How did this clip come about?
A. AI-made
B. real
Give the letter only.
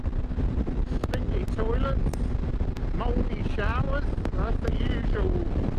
B